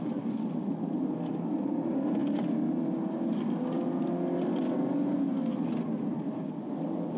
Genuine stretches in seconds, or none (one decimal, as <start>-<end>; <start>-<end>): 0.0-2.2; 2.9-7.2